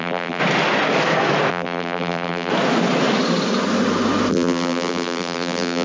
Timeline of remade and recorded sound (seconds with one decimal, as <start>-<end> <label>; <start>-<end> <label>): 0.0-0.4 remade; 0.4-1.5 recorded; 1.5-2.5 remade; 2.5-4.3 recorded; 4.3-5.8 remade